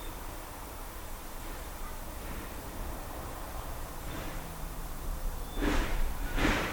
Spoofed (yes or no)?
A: yes